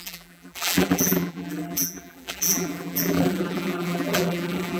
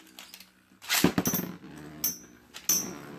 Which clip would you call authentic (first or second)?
second